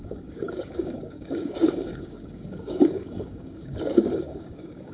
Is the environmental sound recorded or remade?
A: remade